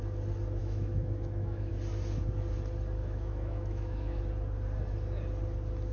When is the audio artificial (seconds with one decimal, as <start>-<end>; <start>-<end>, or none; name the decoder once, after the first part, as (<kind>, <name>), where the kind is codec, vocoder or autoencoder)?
0.6-1.7 (autoencoder, DAC-VAE); 3.0-4.2